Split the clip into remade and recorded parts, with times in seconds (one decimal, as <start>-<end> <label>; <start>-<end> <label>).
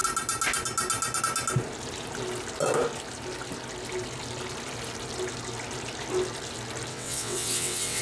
0.0-6.9 recorded; 6.9-8.0 remade